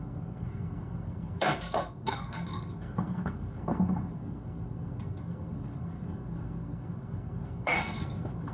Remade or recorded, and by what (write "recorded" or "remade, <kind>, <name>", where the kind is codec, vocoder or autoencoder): remade, codec, SNAC